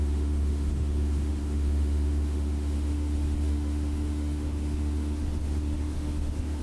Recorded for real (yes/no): no